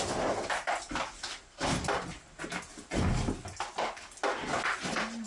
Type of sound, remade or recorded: recorded